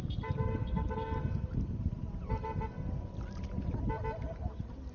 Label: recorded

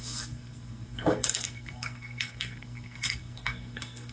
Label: remade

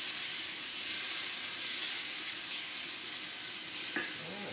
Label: recorded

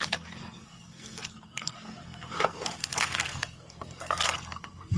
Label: remade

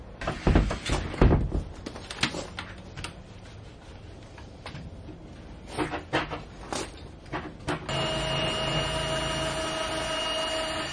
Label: recorded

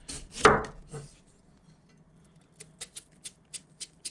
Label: recorded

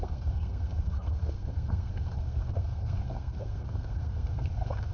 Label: remade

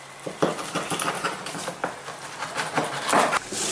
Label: recorded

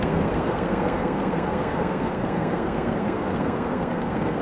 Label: remade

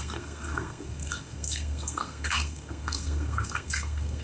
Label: remade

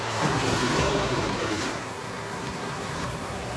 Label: remade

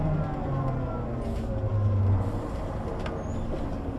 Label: recorded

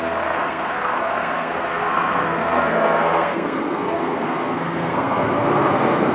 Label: remade